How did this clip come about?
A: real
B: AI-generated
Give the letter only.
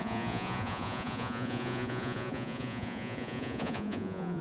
B